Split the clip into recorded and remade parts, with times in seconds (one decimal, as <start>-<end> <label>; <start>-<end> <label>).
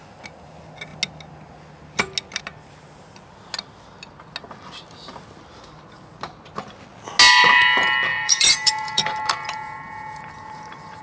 0.0-8.1 recorded; 8.1-11.0 remade